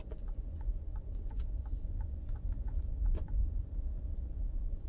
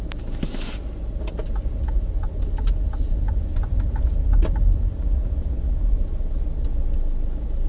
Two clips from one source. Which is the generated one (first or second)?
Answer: first